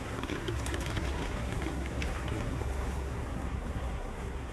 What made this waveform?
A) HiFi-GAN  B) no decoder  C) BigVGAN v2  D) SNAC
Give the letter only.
D